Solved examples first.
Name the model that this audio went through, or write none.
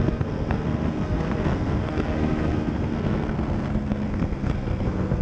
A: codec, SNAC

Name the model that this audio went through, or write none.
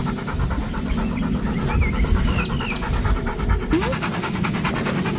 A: none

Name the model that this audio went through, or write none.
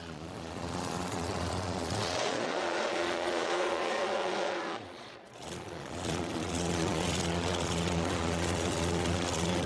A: vocoder, Vocos